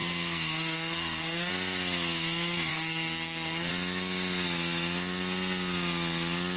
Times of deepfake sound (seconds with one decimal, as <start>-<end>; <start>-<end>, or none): 0.0-1.5; 2.7-3.7